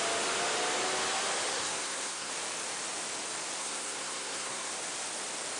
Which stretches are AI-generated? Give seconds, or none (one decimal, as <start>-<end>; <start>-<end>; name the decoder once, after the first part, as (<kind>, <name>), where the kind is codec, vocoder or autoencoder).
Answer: 1.5-2.3 (codec, SNAC); 3.6-4.7